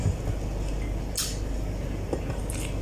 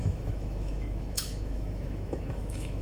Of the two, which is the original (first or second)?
first